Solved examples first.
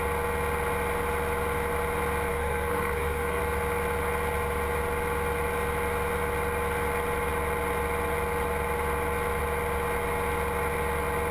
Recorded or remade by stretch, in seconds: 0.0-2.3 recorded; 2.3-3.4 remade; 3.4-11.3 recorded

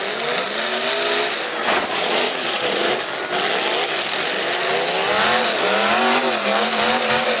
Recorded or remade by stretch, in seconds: 0.0-1.6 recorded; 1.6-2.9 remade; 2.9-7.4 recorded

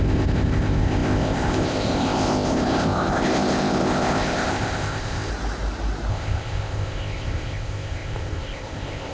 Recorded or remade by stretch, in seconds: 0.0-5.3 remade; 5.3-6.1 recorded; 6.1-9.1 remade